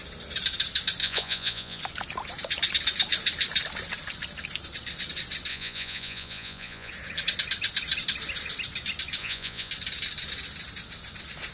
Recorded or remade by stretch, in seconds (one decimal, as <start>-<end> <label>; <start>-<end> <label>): 0.0-1.0 recorded; 1.0-1.8 remade; 1.8-5.5 recorded; 5.5-6.9 remade; 6.9-9.2 recorded; 9.2-9.7 remade; 9.7-11.5 recorded